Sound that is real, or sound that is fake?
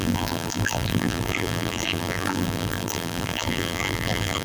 fake